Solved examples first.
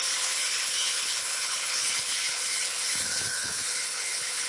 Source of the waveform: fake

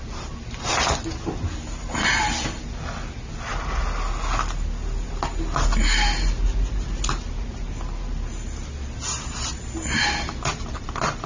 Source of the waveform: real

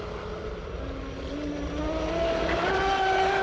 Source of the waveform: real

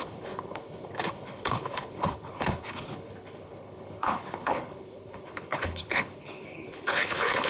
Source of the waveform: fake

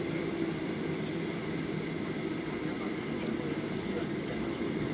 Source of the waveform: fake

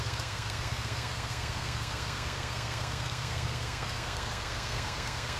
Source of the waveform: fake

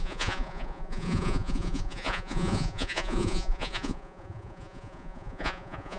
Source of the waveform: fake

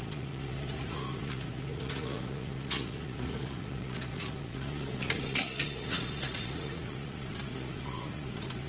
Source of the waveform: fake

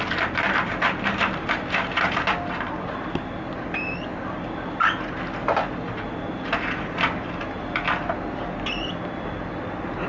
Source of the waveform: real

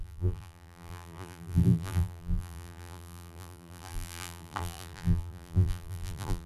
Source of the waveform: fake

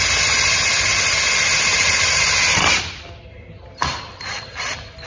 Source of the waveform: real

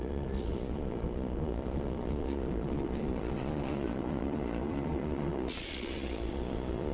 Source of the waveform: fake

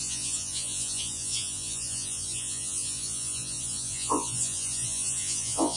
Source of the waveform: fake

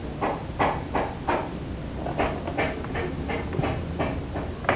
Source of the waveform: real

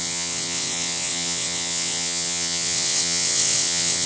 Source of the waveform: fake